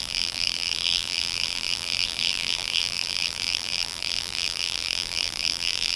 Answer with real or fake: fake